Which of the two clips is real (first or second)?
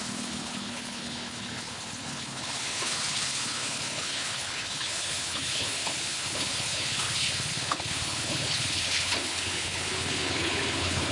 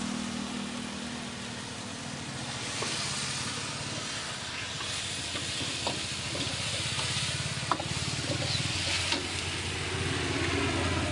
second